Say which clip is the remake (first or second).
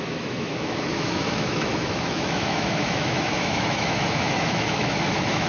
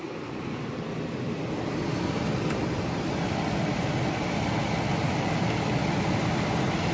first